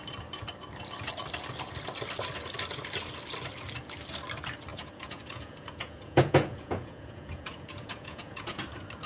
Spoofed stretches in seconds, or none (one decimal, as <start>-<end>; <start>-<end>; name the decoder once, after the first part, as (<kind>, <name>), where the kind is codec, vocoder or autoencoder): 4.7-8.6 (vocoder, Vocos)